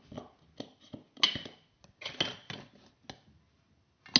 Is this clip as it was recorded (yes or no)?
yes